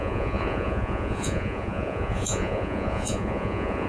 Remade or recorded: remade